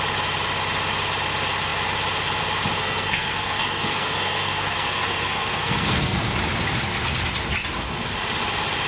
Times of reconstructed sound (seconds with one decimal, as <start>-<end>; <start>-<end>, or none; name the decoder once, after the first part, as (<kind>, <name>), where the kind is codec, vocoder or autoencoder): 2.8-6.2 (codec, SNAC)